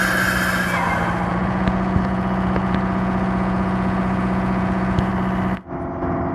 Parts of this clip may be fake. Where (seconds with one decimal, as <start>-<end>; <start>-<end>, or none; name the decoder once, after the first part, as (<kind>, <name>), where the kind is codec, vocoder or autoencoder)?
1.3-5.1 (vocoder, Vocos)

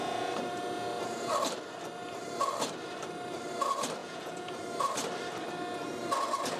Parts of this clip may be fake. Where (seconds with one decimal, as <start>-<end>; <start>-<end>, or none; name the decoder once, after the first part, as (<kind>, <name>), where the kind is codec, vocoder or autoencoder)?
4.0-4.6 (vocoder, Vocos)

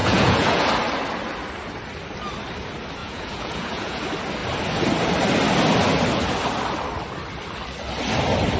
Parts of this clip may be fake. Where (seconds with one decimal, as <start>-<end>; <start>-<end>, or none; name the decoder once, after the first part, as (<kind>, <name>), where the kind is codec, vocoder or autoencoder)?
0.0-0.6 (vocoder, Vocos); 3.0-4.0

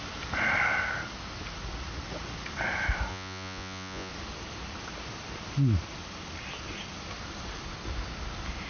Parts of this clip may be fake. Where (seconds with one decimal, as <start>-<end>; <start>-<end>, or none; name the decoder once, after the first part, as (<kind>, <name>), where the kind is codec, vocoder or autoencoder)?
3.1-4.1 (vocoder, Vocos)

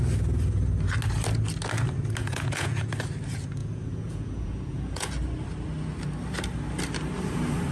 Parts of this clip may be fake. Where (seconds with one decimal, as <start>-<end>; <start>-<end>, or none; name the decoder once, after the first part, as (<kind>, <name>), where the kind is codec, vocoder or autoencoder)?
2.2-2.9 (vocoder, Vocos); 3.6-5.1